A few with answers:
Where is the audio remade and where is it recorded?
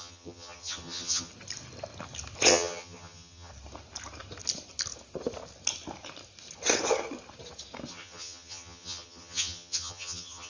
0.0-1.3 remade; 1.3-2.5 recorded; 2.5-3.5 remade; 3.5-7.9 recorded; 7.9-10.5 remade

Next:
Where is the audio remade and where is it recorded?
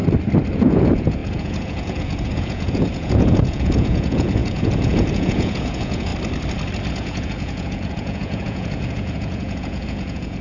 0.0-0.5 recorded; 0.5-6.1 remade; 6.1-6.9 recorded; 6.9-10.4 remade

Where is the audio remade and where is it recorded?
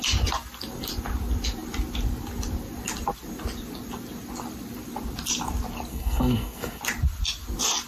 0.0-5.9 recorded; 5.9-6.8 remade; 6.8-7.9 recorded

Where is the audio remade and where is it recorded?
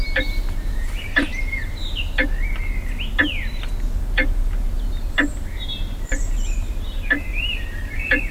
0.0-2.1 remade; 2.1-4.0 recorded; 4.0-8.3 remade